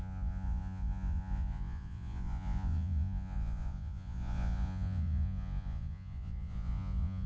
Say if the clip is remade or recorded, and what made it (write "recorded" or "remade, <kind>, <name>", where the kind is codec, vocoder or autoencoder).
remade, vocoder, Vocos